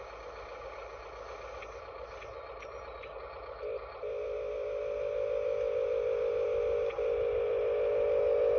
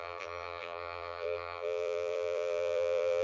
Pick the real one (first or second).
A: first